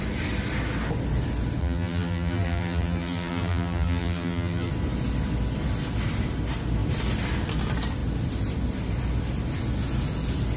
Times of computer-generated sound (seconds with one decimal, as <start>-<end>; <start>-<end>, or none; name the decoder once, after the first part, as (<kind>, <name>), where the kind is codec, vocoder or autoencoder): 1.6-4.7 (vocoder, BigVGAN v2)

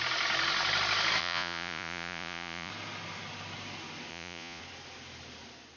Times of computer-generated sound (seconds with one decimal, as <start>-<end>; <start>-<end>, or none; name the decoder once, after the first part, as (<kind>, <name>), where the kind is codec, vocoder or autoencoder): 1.2-2.7 (vocoder, Vocos); 4.1-4.6

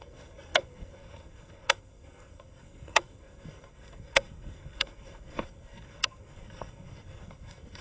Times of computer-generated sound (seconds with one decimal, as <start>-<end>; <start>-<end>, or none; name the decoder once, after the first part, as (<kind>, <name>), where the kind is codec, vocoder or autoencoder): 0.0-7.8 (codec, SNAC)

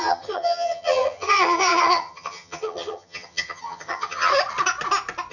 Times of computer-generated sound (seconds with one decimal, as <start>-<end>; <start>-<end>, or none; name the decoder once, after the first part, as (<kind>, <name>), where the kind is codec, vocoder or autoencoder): 0.0-4.3 (vocoder, HiFi-GAN)